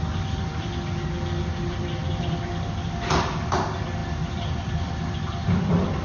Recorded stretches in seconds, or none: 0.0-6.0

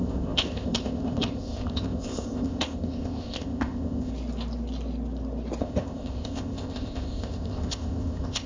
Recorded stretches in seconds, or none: 4.1-5.6

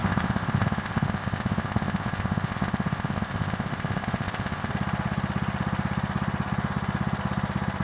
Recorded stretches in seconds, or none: 4.7-7.8

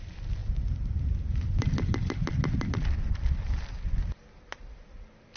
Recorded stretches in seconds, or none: 0.0-5.4